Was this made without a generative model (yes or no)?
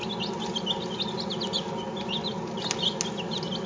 yes